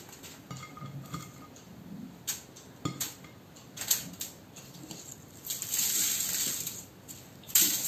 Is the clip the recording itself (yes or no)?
yes